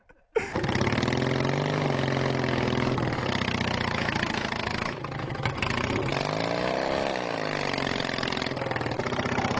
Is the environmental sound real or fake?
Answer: real